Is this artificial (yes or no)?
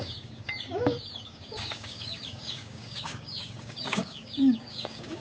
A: yes